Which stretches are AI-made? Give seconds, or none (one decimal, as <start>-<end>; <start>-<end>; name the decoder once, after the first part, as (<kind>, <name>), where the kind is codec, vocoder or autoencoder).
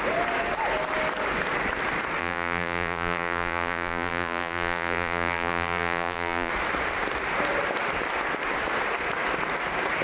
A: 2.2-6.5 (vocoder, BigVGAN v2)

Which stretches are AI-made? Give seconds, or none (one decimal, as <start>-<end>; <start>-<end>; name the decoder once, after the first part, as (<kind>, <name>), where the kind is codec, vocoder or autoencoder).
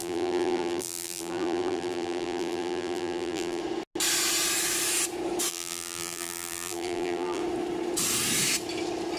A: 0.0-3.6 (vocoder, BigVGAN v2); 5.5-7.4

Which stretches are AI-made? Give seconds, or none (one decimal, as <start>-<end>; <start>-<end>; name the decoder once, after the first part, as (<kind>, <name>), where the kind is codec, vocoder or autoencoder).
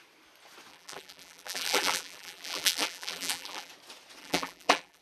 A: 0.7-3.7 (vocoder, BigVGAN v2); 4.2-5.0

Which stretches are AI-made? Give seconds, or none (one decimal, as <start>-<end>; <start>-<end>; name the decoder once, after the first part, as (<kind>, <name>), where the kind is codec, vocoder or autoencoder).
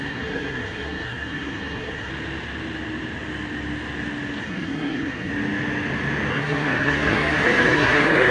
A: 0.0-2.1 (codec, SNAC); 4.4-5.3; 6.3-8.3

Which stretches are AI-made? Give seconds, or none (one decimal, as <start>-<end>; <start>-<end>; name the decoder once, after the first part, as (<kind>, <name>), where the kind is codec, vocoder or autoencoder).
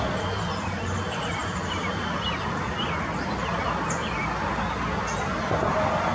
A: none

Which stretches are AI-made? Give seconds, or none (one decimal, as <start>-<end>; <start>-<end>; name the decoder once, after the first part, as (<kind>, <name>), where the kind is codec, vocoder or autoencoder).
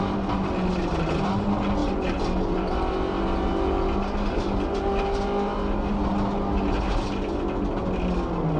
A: none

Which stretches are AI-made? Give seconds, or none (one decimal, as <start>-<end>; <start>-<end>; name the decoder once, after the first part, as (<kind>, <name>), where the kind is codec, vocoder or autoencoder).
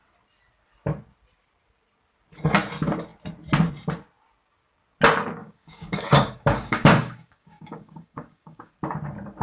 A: 5.4-8.7 (codec, DAC)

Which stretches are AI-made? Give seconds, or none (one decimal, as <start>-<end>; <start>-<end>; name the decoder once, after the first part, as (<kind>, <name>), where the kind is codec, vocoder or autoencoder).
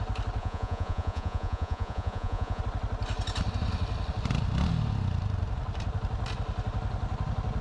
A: 0.4-2.6 (vocoder, Vocos)